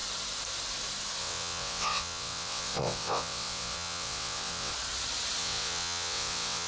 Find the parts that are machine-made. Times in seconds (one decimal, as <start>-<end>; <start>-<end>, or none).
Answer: 1.2-4.7; 5.4-6.7